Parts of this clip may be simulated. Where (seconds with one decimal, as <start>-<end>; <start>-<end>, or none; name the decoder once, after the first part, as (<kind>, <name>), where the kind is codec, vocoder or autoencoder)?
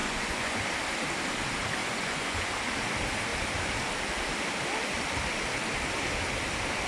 0.0-0.6 (vocoder, Vocos); 1.8-2.5